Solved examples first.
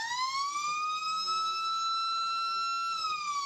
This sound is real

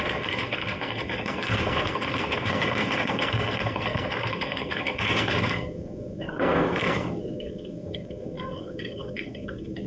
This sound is fake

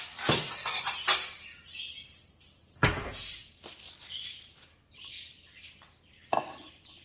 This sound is real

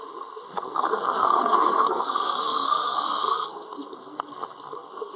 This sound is fake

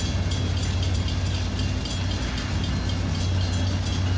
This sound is real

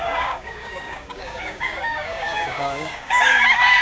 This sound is fake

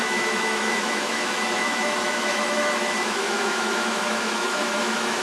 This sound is fake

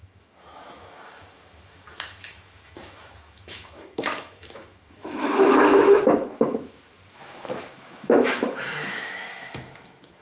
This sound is fake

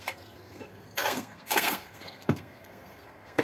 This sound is fake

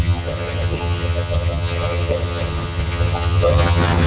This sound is fake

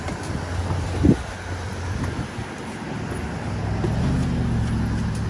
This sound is real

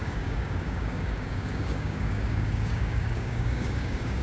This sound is fake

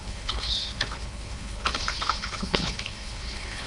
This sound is fake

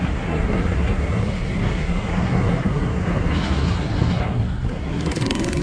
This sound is fake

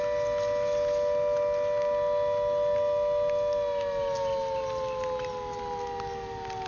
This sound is real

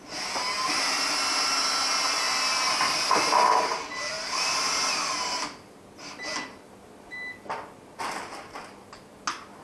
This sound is real